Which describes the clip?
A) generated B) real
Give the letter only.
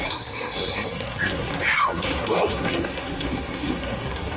A